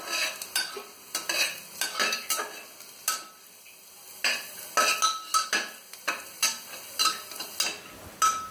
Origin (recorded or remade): recorded